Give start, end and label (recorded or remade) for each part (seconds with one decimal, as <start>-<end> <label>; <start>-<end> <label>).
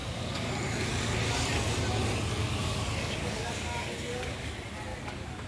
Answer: 0.0-0.5 remade; 0.5-2.4 recorded; 2.4-4.5 remade; 4.5-4.9 recorded; 4.9-5.5 remade